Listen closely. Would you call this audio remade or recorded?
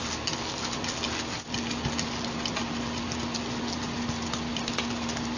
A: recorded